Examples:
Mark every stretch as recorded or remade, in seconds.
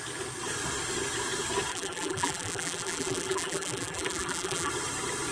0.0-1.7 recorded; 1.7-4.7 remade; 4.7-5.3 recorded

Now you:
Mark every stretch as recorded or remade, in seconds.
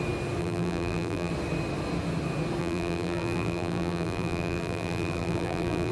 0.0-0.4 recorded; 0.4-1.3 remade; 1.3-2.6 recorded; 2.6-5.9 remade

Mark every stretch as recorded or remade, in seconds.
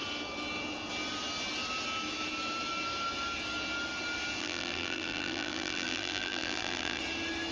0.0-4.4 recorded; 4.4-7.0 remade; 7.0-7.5 recorded